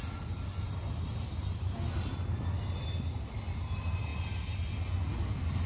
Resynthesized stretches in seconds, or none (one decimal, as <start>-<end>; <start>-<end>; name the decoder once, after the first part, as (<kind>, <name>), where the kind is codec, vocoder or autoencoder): none